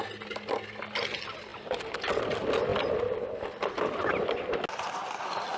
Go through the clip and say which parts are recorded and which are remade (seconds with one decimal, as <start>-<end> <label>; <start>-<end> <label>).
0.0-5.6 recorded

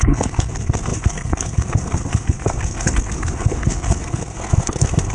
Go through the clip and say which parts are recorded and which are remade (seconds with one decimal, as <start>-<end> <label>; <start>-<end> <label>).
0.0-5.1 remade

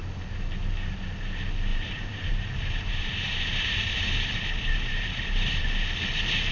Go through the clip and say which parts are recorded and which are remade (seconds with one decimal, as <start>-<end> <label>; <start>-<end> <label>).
0.0-1.7 recorded; 1.7-2.3 remade; 2.3-2.9 recorded; 2.9-5.6 remade; 5.6-6.5 recorded